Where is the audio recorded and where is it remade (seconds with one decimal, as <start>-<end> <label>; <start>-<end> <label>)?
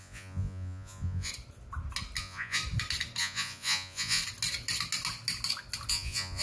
0.0-1.3 remade; 1.3-2.2 recorded; 2.2-2.6 remade; 2.6-3.2 recorded; 3.2-4.2 remade; 4.2-5.9 recorded; 5.9-6.4 remade